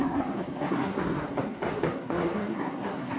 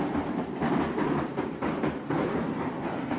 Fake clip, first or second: first